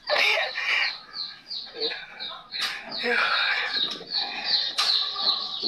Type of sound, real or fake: real